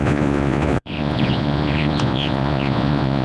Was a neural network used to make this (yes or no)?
yes